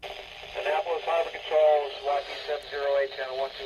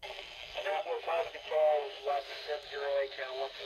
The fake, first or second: second